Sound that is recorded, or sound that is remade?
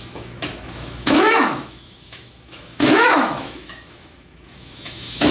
remade